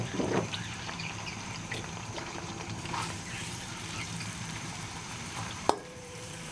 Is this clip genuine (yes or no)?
no